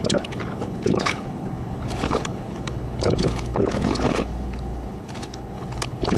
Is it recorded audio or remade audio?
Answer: remade